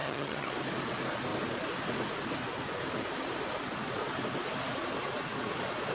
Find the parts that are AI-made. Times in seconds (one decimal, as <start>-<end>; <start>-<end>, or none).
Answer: 0.0-0.5